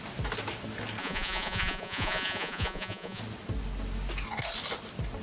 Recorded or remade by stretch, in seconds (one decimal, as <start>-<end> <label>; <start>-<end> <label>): 0.0-1.0 recorded; 1.0-3.2 remade; 3.2-5.2 recorded